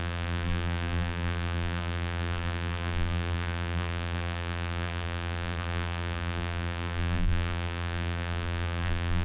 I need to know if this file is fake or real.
fake